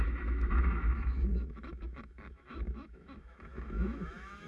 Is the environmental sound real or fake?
fake